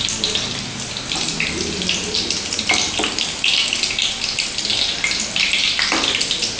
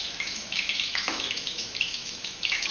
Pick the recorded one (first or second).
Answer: first